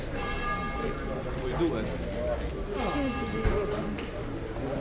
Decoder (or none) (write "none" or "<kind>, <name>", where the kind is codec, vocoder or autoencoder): none